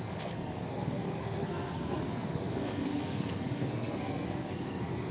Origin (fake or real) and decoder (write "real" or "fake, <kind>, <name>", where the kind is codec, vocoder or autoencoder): fake, codec, SNAC